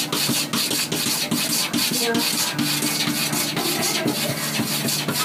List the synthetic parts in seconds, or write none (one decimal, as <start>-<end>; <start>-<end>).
none